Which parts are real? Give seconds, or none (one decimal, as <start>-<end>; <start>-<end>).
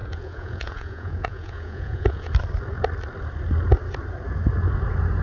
2.3-5.2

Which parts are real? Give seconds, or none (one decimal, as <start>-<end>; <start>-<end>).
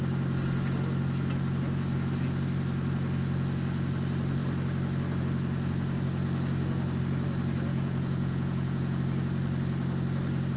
0.0-7.7; 9.0-10.6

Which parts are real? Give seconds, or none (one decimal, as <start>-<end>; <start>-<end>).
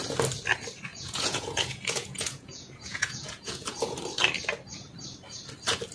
0.0-0.9; 4.0-5.9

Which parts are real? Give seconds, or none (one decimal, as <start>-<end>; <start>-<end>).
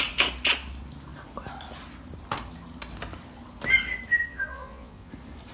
0.0-4.2; 5.1-5.5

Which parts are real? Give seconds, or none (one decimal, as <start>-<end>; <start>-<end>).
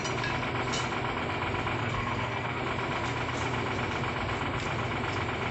0.0-1.8; 2.6-5.5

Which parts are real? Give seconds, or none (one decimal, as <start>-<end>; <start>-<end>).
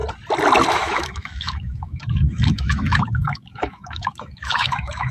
0.0-0.7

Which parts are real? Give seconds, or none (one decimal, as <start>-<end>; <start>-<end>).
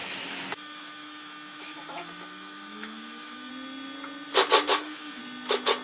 3.5-4.7; 5.2-5.8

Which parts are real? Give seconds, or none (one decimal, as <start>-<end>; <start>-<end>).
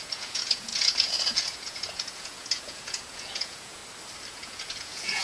3.8-4.3